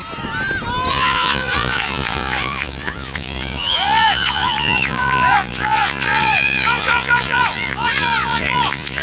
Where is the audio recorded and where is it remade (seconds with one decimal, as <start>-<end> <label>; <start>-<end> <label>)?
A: 0.0-0.9 recorded; 0.9-9.0 remade